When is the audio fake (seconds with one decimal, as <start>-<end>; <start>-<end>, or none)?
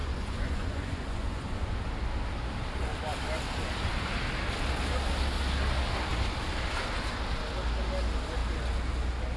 0.0-1.7